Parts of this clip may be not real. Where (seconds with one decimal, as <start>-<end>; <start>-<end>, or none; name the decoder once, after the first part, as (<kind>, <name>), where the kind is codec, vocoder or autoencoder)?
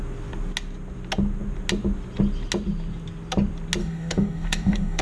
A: 3.8-5.0 (codec, DAC)